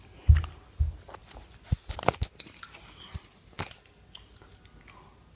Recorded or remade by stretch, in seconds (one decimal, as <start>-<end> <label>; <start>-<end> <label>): 0.0-5.4 recorded